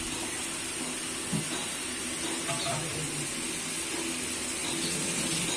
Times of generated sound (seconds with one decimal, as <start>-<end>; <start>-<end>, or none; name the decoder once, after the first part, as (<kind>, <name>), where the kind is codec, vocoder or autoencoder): none